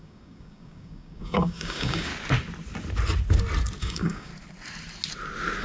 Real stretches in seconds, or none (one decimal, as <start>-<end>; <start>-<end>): 2.1-3.8; 4.3-5.6